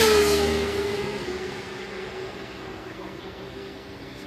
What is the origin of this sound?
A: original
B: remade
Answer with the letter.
B